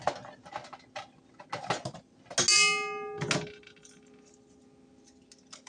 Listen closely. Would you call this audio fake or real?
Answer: real